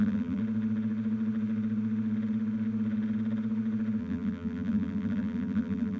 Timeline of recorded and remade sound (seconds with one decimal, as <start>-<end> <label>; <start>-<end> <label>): 0.0-0.4 remade; 0.4-4.0 recorded; 4.0-6.0 remade